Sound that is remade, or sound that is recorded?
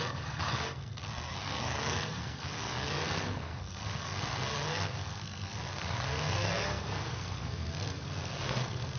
remade